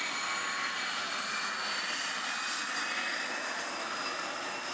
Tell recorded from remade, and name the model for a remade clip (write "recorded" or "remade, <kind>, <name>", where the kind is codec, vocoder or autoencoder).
recorded